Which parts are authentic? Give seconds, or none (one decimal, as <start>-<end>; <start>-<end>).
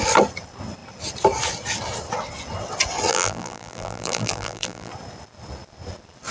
0.0-3.1; 4.9-6.3